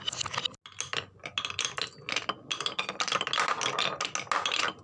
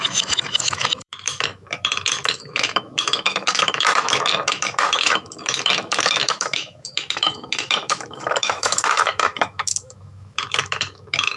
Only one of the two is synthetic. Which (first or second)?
second